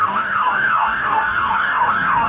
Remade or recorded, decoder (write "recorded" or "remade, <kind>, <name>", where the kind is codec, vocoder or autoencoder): remade, codec, DAC